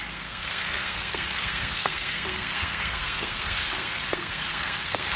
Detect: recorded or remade remade